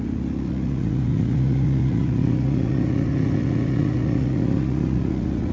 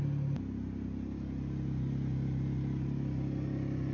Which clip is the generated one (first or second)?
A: first